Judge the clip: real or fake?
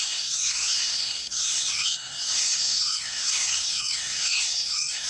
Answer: fake